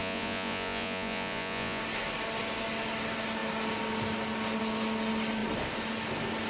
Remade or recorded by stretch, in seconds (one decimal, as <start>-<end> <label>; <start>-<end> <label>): 0.0-1.8 remade; 1.8-6.5 recorded